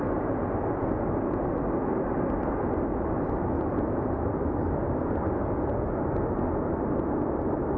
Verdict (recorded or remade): recorded